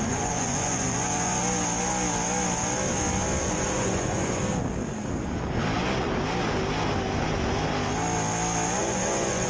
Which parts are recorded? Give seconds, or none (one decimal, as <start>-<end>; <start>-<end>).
1.4-3.4; 4.4-8.8